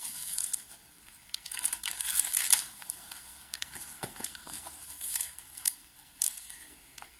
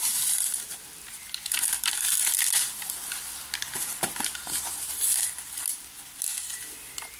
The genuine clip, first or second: second